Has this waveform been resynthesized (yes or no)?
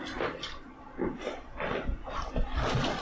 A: no